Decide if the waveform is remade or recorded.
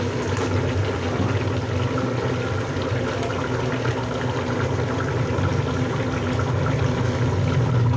recorded